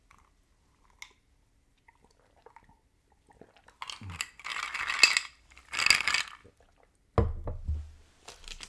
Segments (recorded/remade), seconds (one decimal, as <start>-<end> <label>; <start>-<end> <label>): 0.0-8.7 recorded